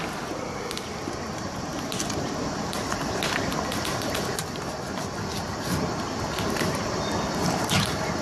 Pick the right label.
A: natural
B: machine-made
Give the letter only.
A